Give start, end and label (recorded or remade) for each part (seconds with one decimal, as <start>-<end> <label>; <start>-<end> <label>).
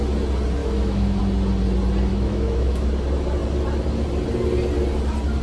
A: 0.0-0.6 recorded; 0.6-1.2 remade; 1.2-2.1 recorded; 2.1-2.9 remade; 2.9-5.4 recorded